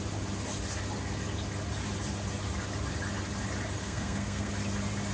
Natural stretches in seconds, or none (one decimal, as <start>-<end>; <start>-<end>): 0.0-3.8; 4.5-5.1

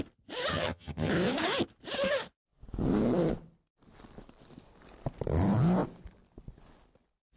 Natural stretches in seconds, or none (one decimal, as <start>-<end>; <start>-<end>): 0.0-0.5; 1.1-7.4

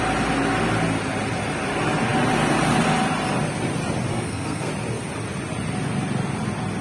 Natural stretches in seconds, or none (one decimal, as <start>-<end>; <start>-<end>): 0.0-4.1; 4.7-6.8

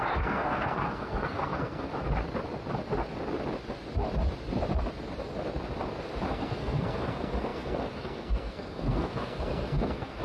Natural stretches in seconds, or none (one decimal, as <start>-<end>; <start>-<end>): 1.9-6.3

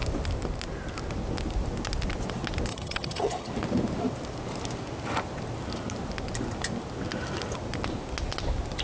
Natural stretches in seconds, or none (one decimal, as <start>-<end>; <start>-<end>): 0.0-2.7; 3.5-8.8